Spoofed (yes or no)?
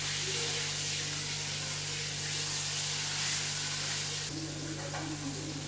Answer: no